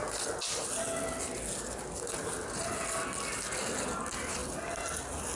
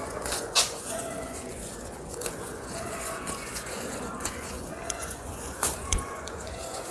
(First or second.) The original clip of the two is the first